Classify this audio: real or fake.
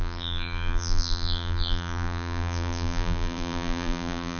fake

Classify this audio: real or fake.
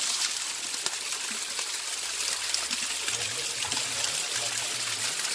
real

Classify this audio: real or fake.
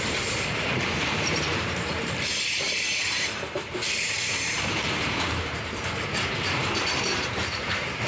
fake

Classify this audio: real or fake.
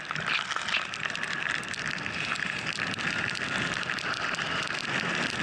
fake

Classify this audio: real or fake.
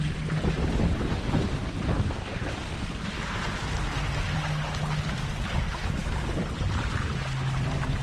real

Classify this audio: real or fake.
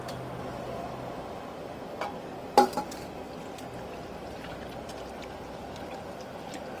real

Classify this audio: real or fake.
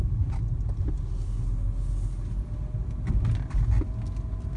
real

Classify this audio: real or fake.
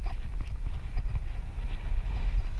real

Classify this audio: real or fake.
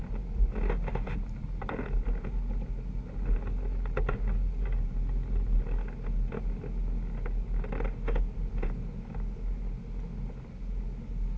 real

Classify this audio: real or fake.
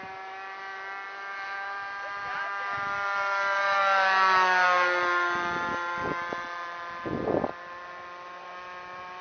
real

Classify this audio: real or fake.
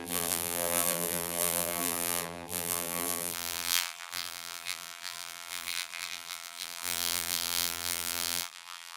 fake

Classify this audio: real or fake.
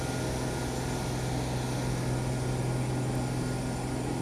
real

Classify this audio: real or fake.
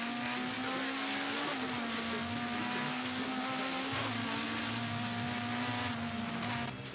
real